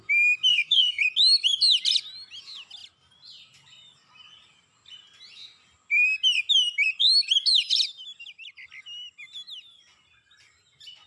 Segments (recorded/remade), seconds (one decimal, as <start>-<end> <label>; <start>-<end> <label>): 0.0-0.5 recorded; 0.5-1.0 remade; 1.0-11.1 recorded